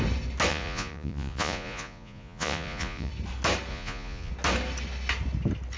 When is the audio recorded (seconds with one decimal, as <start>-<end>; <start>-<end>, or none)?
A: 0.0-0.5; 3.1-3.7; 4.3-5.8

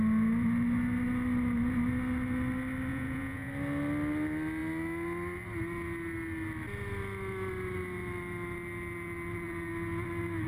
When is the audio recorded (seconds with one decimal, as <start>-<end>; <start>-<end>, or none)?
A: 0.0-2.9; 3.5-10.5

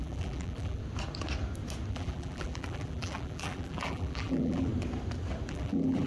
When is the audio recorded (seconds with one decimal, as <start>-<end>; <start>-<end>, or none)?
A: 0.8-1.9; 4.7-5.5

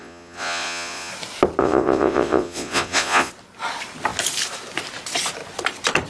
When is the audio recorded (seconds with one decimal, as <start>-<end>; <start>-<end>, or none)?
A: 1.1-1.6; 3.3-6.1